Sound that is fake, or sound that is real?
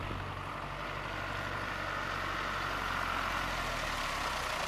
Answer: real